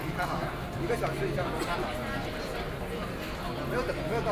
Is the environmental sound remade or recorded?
recorded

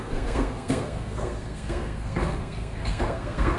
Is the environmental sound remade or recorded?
remade